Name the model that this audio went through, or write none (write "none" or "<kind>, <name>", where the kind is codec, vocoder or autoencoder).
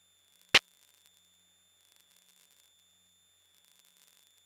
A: none